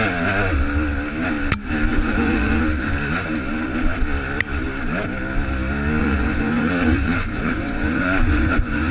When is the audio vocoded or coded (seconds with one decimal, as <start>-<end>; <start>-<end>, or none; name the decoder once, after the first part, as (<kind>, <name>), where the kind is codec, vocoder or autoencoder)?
1.9-2.6 (vocoder, Vocos); 6.0-8.9